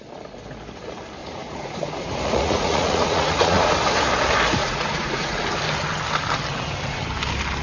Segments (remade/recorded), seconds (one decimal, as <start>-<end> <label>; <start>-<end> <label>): 0.0-1.2 recorded; 1.2-3.7 remade; 3.7-4.6 recorded; 4.6-5.4 remade; 5.4-7.6 recorded